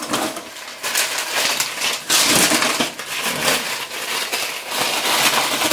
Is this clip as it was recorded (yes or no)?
yes